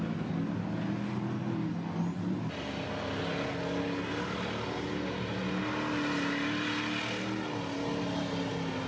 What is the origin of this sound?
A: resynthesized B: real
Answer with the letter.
B